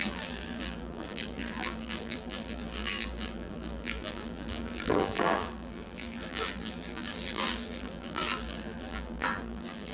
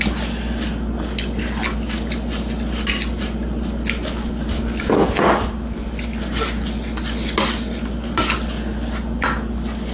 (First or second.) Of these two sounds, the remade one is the first